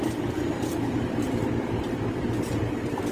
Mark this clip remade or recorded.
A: recorded